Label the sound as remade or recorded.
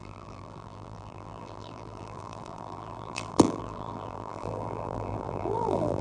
remade